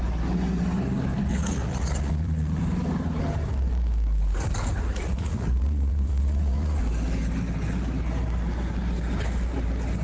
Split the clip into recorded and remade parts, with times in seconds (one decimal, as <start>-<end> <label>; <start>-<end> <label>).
0.0-1.3 recorded; 1.3-2.6 remade; 2.6-4.9 recorded; 4.9-6.8 remade; 6.8-10.0 recorded